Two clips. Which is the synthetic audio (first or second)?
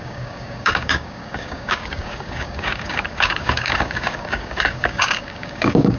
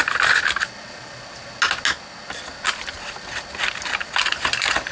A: first